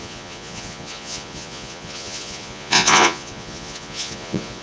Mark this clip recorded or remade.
remade